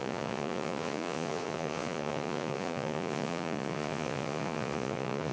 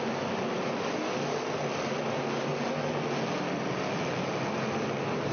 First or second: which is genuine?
second